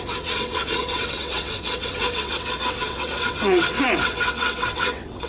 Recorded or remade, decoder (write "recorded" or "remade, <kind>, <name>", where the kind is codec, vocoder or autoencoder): remade, vocoder, WaveNeXt